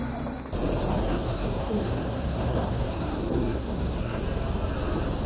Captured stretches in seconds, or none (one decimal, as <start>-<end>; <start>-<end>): 0.0-1.0; 4.2-5.3